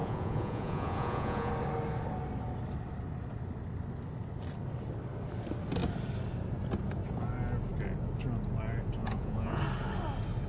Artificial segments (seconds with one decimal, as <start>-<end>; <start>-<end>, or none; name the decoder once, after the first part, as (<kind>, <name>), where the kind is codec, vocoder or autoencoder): 0.0-1.5 (vocoder, Vocos); 9.0-9.6

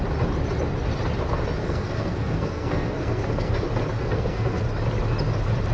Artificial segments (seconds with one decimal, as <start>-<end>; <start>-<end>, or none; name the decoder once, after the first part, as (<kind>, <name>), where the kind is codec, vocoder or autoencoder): 1.6-3.5 (codec, SNAC); 4.0-4.6

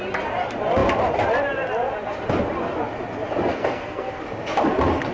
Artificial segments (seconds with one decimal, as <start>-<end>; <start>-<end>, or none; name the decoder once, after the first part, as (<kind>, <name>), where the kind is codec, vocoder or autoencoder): 3.5-4.2 (codec, SNAC)

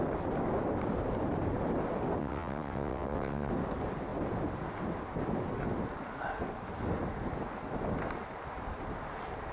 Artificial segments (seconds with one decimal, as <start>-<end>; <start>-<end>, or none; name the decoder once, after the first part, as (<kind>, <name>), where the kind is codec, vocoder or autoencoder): 2.2-3.5 (vocoder, WaveNeXt)